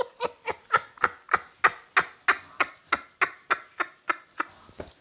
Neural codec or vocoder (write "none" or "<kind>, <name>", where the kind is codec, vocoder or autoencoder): none